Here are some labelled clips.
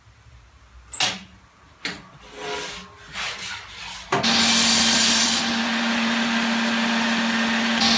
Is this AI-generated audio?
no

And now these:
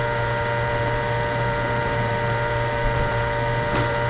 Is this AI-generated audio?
yes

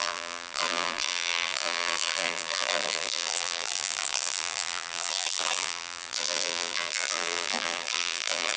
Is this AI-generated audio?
yes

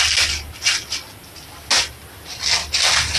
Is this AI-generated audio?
no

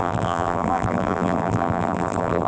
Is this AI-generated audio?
yes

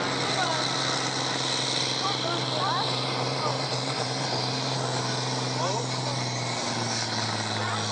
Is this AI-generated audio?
yes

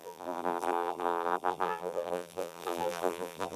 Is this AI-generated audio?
yes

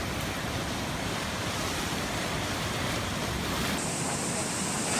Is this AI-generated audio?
yes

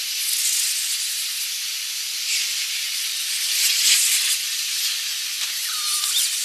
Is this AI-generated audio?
yes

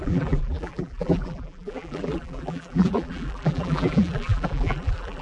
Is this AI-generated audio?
yes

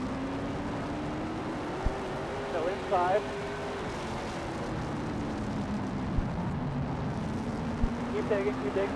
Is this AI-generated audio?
no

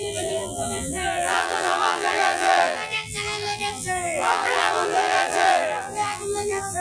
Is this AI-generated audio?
yes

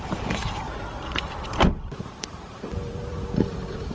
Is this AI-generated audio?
yes